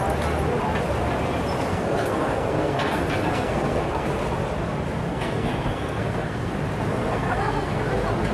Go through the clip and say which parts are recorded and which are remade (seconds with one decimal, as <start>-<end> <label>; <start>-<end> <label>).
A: 0.0-1.7 recorded; 1.7-4.2 remade; 4.2-5.1 recorded; 5.1-6.5 remade; 6.5-6.9 recorded; 6.9-7.8 remade; 7.8-8.3 recorded